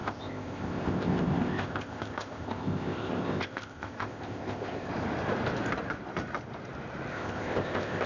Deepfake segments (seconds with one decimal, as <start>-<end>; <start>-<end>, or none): 0.0-4.9; 7.1-8.1